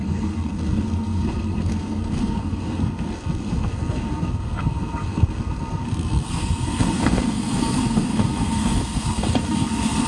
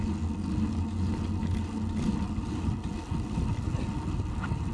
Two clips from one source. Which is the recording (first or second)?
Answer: second